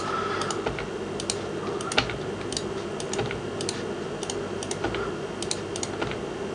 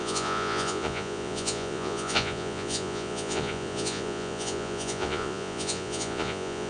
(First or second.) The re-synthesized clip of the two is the second